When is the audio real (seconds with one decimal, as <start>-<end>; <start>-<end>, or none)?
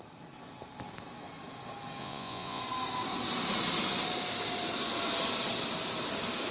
0.0-2.0; 2.6-6.5